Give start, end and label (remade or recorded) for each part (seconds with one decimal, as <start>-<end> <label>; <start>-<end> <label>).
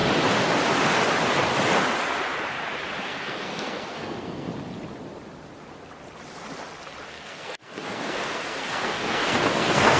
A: 0.0-3.0 recorded; 3.0-4.5 remade; 4.5-7.1 recorded; 7.1-10.0 remade